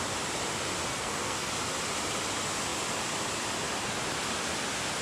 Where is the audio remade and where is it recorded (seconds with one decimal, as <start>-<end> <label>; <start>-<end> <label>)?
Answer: 0.0-0.9 recorded; 0.9-1.5 remade; 1.5-5.0 recorded